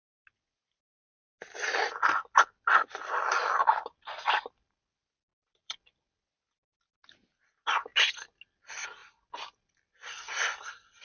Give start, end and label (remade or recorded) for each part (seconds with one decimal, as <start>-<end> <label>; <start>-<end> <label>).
0.0-5.3 recorded; 5.3-6.0 remade; 6.0-9.0 recorded; 9.0-10.3 remade; 10.3-11.0 recorded